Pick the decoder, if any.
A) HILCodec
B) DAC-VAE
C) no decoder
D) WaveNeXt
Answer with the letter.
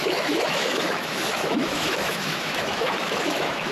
B